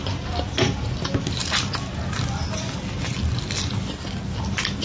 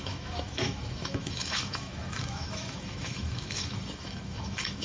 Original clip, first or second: first